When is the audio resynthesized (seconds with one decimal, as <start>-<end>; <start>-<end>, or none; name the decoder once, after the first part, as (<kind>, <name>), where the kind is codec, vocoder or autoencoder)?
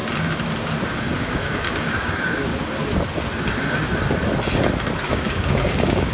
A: 0.9-2.5 (codec, DAC); 5.1-6.1